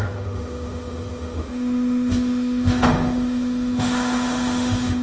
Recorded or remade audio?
remade